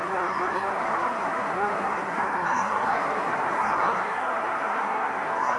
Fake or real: fake